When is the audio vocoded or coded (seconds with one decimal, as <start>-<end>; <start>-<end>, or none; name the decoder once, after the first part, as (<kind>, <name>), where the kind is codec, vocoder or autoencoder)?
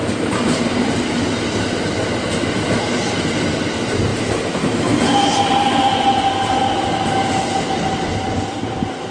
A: 0.0-0.9 (vocoder, BigVGAN v2); 4.1-5.0